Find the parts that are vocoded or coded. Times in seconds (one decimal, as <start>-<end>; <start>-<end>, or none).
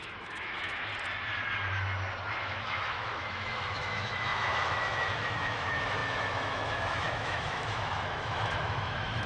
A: 0.0-0.9; 2.4-9.3